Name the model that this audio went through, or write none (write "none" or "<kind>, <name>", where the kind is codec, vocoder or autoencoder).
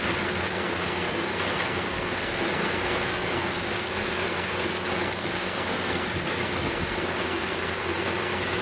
codec, SNAC